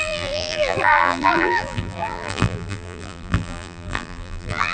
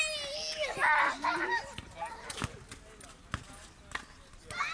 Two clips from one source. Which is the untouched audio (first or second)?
second